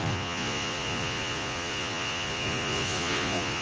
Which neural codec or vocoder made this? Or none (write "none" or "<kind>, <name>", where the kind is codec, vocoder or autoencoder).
vocoder, Vocos